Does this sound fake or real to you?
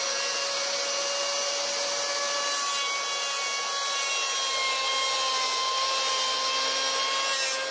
real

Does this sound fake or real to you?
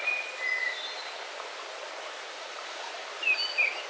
real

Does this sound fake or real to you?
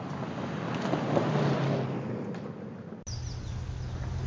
real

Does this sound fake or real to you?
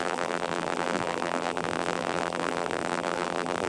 fake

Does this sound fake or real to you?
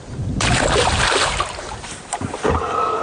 fake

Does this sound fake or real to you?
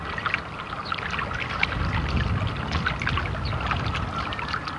real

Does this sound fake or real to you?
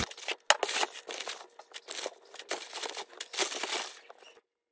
real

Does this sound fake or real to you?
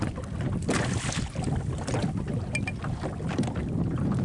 real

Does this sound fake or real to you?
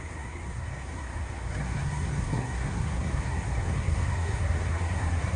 fake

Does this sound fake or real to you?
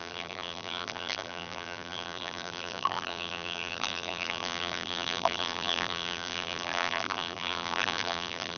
fake